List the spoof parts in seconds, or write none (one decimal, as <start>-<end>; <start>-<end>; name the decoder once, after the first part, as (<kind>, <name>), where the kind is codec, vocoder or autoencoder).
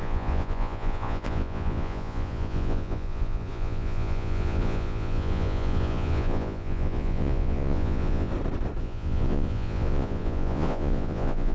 0.0-8.3 (vocoder, Vocos); 8.8-11.5